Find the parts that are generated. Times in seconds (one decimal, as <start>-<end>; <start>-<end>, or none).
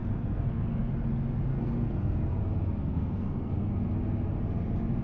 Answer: 0.0-0.9; 1.5-2.4; 2.9-3.7